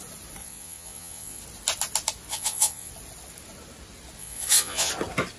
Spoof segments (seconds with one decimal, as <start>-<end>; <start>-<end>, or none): 0.4-1.4; 2.3-2.9; 4.2-4.9